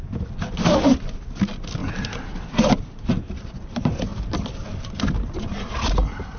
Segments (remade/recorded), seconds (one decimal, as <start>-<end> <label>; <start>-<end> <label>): 0.0-1.8 recorded; 1.8-3.1 remade; 3.1-6.4 recorded